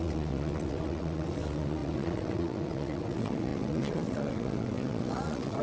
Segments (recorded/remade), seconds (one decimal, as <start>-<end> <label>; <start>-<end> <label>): 0.0-5.6 remade